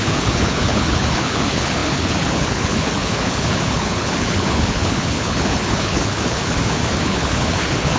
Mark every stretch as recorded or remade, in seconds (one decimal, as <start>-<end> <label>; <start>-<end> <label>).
0.0-8.0 remade